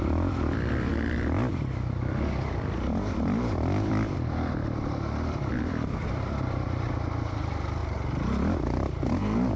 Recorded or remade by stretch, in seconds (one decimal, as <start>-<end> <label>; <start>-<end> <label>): 0.0-0.9 remade; 0.9-1.5 recorded; 1.5-7.8 remade; 7.8-9.1 recorded; 9.1-9.6 remade